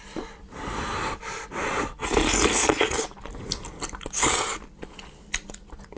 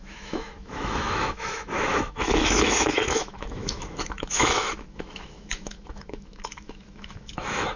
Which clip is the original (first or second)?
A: first